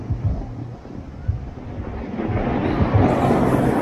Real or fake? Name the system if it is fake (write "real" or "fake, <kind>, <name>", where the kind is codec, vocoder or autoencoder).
real